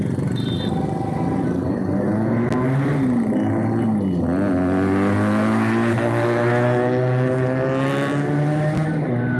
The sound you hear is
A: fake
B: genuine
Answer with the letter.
B